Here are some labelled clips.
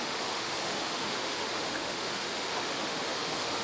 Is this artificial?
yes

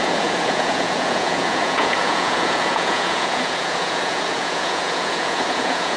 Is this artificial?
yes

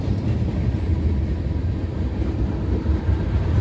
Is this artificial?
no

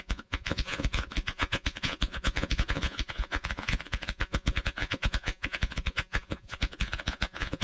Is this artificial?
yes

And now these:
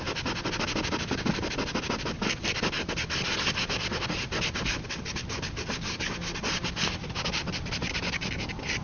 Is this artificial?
no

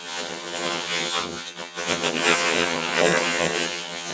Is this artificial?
yes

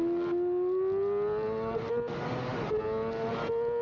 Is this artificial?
no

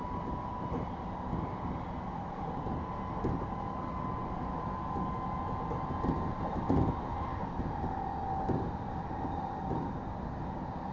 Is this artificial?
no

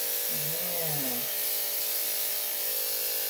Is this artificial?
no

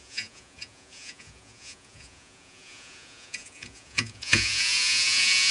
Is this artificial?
yes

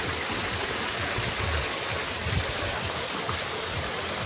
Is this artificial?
no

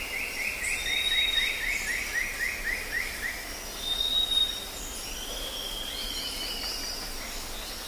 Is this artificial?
no